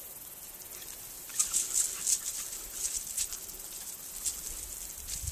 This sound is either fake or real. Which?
real